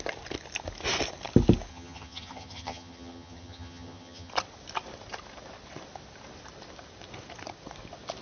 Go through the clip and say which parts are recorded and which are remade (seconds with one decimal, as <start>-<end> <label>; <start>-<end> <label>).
0.0-1.7 recorded; 1.7-4.3 remade; 4.3-8.2 recorded